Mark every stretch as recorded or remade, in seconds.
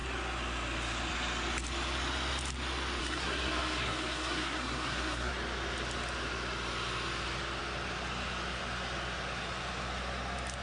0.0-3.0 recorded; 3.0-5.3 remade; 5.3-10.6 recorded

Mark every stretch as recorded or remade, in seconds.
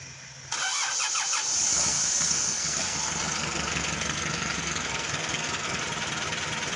0.0-1.7 recorded; 1.7-5.8 remade; 5.8-6.8 recorded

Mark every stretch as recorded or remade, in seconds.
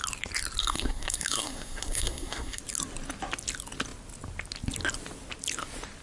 0.0-0.6 recorded; 0.6-2.6 remade; 2.6-6.0 recorded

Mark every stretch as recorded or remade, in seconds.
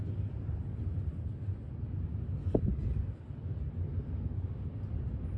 0.0-5.4 recorded